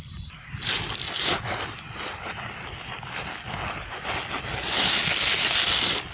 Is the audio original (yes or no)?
yes